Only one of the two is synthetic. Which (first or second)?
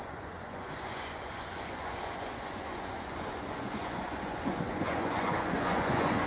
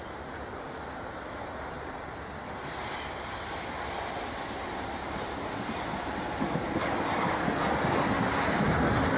first